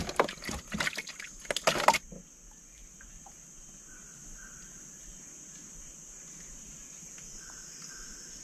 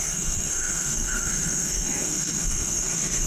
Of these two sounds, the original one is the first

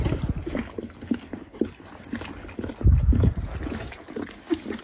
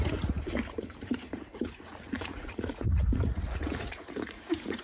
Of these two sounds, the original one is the first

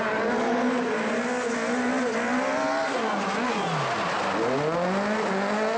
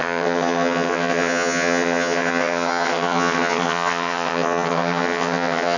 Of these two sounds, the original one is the first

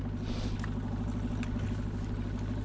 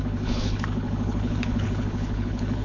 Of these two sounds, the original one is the first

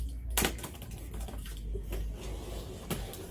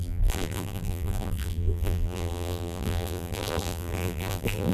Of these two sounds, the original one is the first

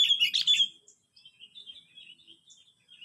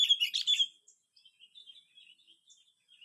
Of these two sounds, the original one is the first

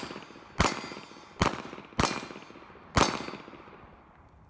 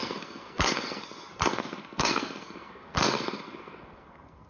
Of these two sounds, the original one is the first